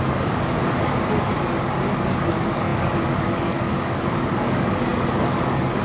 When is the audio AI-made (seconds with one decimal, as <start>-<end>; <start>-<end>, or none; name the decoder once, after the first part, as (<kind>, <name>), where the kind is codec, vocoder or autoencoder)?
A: 0.0-5.8 (codec, DAC)